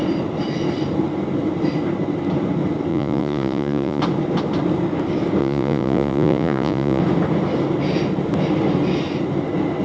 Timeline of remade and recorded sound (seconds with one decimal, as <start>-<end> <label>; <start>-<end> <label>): 0.0-2.9 recorded; 2.9-4.0 remade; 4.0-5.4 recorded; 5.4-7.0 remade; 7.0-9.8 recorded